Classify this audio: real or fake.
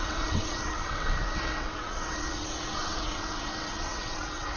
fake